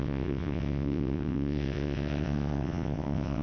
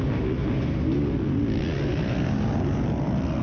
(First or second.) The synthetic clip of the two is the first